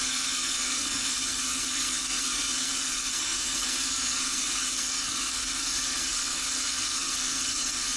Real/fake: fake